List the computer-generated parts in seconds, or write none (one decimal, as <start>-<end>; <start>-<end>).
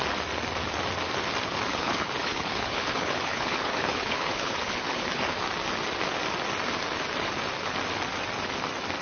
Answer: 1.7-5.4